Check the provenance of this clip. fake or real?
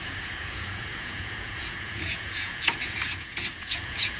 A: fake